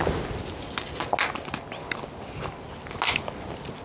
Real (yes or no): yes